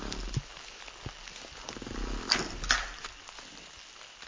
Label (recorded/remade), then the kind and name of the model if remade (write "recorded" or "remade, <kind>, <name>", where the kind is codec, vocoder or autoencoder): recorded